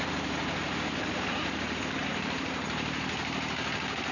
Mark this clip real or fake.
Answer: fake